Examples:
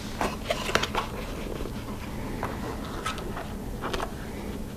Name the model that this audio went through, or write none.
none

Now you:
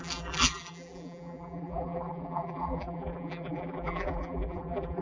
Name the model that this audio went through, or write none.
vocoder, BigVGAN v2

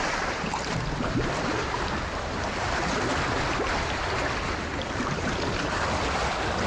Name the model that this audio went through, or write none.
none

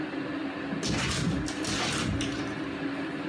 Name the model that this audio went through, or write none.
none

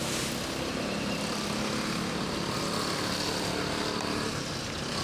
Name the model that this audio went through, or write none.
none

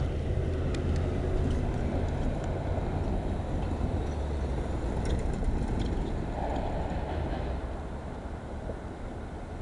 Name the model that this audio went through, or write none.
none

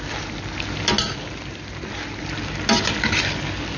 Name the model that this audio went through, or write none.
none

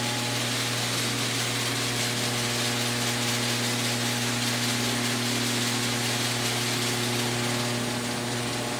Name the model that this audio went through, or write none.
none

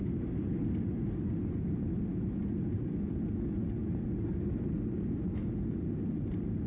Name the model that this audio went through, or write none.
none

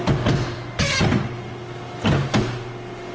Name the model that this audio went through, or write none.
none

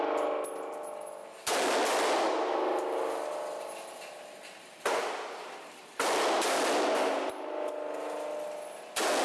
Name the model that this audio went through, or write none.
none